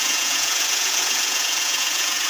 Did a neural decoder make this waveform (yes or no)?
yes